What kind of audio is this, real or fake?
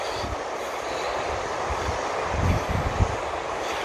real